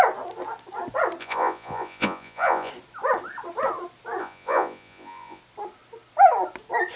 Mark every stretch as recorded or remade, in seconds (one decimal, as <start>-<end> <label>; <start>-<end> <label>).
0.0-1.2 recorded; 1.2-2.7 remade; 2.7-4.2 recorded; 4.2-5.4 remade; 5.4-7.0 recorded